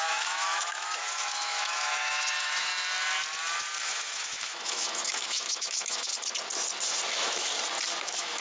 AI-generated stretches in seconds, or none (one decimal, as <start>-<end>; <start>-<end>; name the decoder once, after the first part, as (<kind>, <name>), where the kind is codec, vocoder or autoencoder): 0.0-2.7 (autoencoder, DAC-VAE); 3.8-6.1; 7.1-7.5; 8.0-8.4